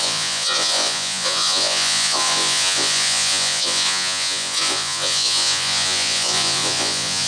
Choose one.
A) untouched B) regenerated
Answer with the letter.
B